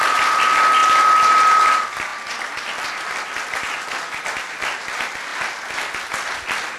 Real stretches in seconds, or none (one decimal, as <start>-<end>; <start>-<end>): 0.0-6.8